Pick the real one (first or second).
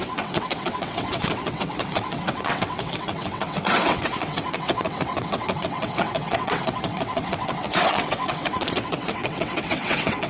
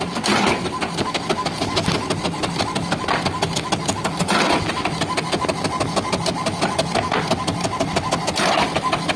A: second